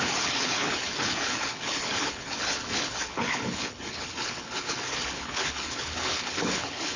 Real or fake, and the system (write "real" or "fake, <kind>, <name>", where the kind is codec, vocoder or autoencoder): fake, codec, HILCodec